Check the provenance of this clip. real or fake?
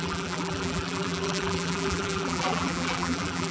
fake